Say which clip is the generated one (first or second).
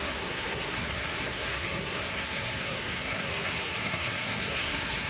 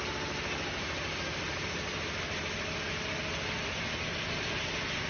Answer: first